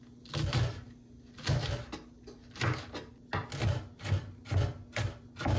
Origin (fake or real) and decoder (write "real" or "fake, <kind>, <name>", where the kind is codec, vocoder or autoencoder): real